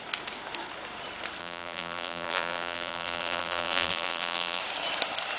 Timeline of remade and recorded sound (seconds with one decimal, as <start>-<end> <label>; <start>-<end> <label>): 0.0-1.4 recorded; 1.4-4.6 remade; 4.6-5.4 recorded